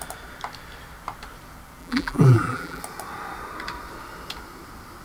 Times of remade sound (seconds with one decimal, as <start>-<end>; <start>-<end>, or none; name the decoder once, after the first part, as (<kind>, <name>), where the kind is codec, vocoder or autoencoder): 1.8-2.8 (vocoder, BigVGAN v2)